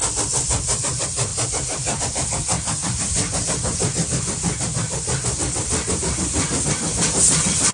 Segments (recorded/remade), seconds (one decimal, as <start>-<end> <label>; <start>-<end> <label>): 0.0-1.3 recorded; 1.3-2.0 remade; 2.0-2.8 recorded; 2.8-3.9 remade; 3.9-7.7 recorded